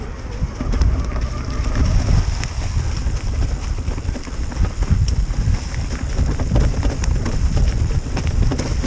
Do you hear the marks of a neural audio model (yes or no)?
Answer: no